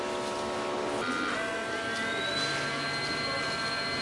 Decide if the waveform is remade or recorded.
recorded